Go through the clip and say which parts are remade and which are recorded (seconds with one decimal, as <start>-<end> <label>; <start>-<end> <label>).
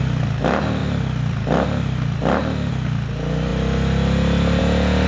0.0-5.1 recorded